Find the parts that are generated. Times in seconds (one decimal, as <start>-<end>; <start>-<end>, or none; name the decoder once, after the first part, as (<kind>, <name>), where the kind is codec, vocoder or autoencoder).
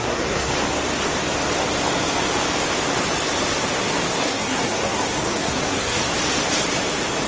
0.0-0.5 (codec, SNAC); 4.2-6.0